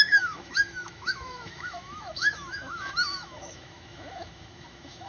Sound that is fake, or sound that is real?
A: fake